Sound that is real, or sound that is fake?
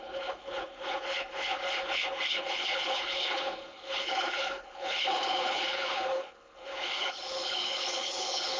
fake